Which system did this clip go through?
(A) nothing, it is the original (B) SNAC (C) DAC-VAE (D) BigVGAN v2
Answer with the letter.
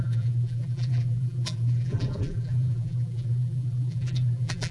D